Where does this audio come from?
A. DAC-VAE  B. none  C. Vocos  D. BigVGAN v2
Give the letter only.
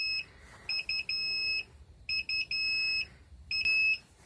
B